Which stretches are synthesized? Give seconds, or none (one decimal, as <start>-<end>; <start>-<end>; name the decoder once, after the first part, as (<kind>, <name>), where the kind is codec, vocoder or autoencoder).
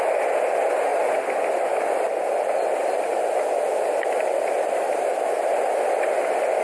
none